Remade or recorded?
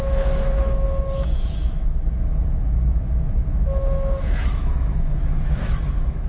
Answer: remade